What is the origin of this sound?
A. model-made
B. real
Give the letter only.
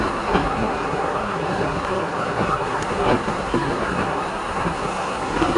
A